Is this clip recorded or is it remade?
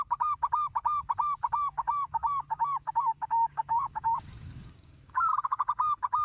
remade